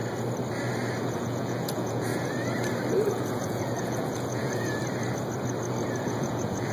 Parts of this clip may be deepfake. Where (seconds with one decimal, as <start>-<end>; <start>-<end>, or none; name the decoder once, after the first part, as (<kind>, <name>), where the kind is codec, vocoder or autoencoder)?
1.0-2.1 (vocoder, Vocos); 3.1-4.8; 6.0-6.7